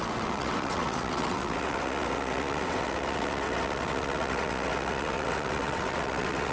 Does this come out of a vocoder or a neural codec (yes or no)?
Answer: yes